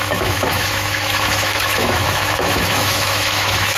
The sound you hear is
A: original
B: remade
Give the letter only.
B